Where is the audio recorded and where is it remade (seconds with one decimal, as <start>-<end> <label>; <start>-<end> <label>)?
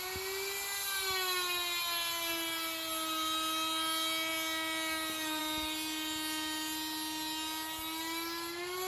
0.0-8.9 recorded